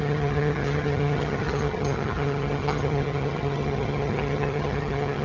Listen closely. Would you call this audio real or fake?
fake